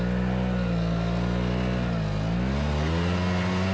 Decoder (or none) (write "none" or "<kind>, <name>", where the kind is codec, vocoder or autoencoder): none